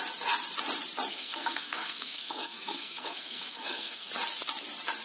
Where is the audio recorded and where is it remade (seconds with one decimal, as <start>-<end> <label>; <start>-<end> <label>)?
0.0-1.1 recorded; 1.1-4.1 remade; 4.1-5.0 recorded